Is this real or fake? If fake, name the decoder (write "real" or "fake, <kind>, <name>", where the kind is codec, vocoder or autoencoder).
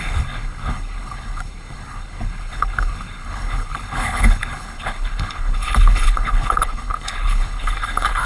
fake, codec, HILCodec